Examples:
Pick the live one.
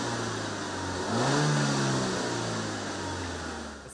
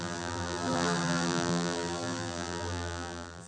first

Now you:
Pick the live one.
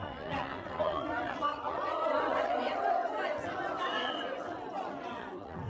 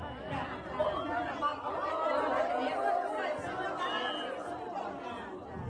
second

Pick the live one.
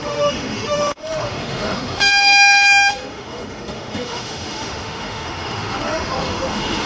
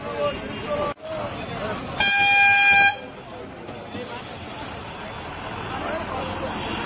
second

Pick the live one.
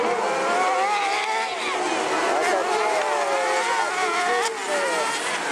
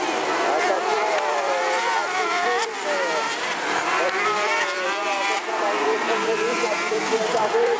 first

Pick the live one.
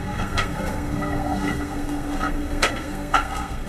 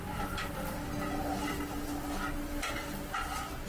second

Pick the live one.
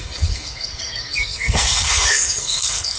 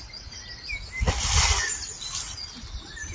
second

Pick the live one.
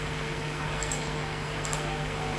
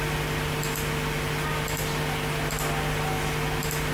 second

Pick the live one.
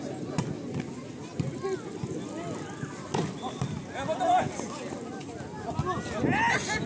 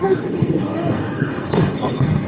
first